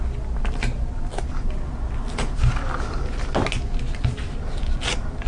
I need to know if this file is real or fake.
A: real